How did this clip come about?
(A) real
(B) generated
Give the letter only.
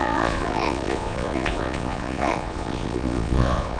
B